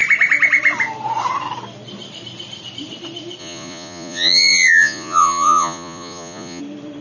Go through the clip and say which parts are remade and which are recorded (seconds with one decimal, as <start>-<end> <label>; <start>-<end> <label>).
0.0-3.4 recorded; 3.4-6.6 remade; 6.6-7.0 recorded